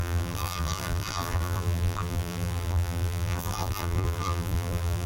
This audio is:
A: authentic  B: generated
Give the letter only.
B